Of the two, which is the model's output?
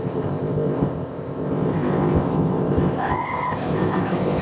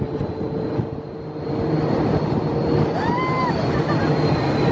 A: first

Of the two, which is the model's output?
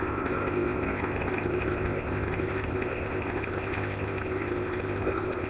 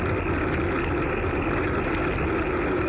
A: first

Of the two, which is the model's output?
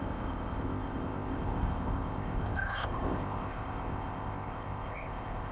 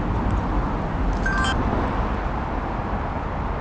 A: first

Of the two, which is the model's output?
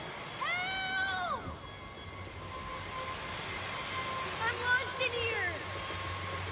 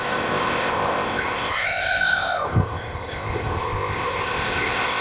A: second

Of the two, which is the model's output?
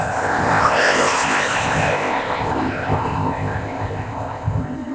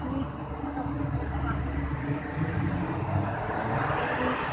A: first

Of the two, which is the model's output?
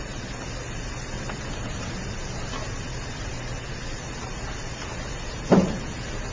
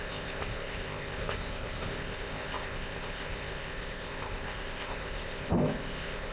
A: second